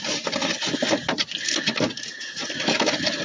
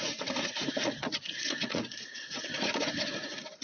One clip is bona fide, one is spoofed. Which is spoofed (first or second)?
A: second